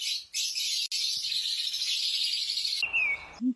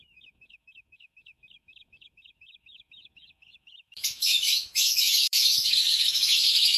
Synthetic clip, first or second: second